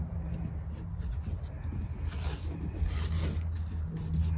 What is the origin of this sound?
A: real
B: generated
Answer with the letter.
A